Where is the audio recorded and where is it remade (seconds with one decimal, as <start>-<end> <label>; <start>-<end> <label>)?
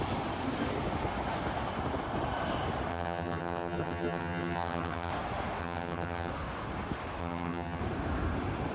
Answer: 0.0-2.9 recorded; 2.9-5.1 remade; 5.1-5.6 recorded; 5.6-6.3 remade; 6.3-7.2 recorded; 7.2-7.8 remade; 7.8-8.7 recorded